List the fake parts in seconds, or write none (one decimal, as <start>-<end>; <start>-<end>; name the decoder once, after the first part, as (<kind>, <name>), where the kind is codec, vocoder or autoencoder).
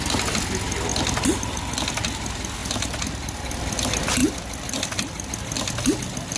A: none